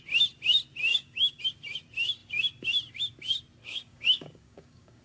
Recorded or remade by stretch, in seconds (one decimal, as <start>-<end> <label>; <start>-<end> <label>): 0.0-0.9 recorded; 0.9-1.4 remade; 1.4-3.6 recorded; 3.6-5.0 remade